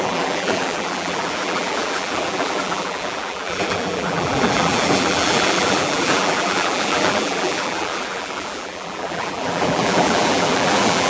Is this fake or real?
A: fake